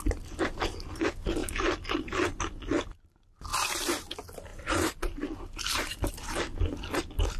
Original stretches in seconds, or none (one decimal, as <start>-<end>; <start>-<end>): 0.0-1.4; 2.4-3.5; 4.1-4.5; 6.1-7.4

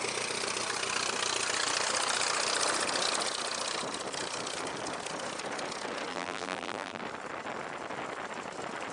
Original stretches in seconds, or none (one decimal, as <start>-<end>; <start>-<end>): 0.0-6.1; 7.0-8.9

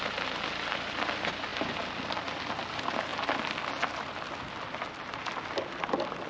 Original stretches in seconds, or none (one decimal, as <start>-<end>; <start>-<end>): 0.0-6.3

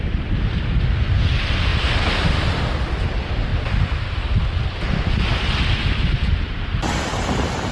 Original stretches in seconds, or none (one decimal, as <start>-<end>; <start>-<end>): 0.0-7.7